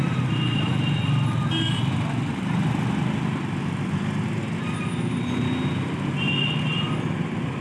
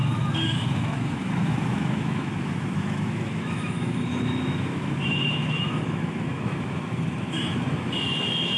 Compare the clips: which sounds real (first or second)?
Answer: first